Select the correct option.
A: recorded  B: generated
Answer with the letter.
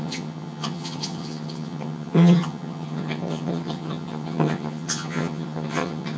B